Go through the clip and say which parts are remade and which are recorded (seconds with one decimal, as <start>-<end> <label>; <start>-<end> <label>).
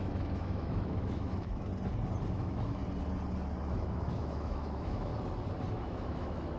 0.0-1.7 remade; 1.7-2.3 recorded; 2.3-2.8 remade; 2.8-3.6 recorded; 3.6-5.1 remade; 5.1-5.7 recorded; 5.7-6.6 remade